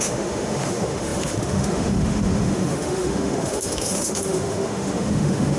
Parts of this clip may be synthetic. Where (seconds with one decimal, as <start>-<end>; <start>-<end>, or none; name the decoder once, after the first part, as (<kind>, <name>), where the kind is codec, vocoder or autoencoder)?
0.0-5.6 (autoencoder, DAC-VAE)